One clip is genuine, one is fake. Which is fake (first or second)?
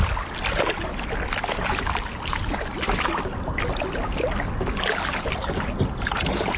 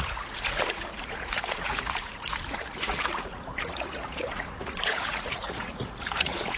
second